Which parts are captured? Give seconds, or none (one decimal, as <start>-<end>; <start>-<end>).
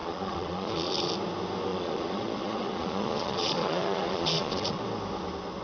1.1-1.7; 4.8-5.6